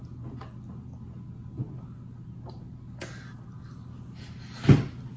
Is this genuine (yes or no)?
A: yes